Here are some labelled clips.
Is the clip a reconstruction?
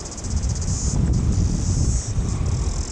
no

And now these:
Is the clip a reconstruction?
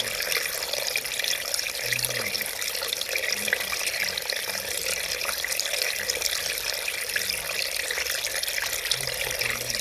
yes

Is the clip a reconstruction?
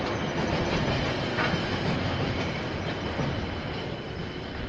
no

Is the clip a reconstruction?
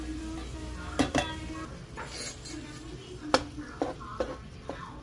no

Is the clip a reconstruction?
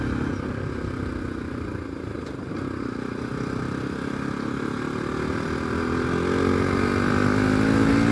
no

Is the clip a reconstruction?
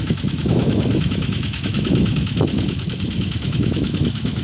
yes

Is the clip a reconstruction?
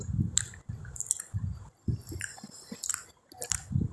yes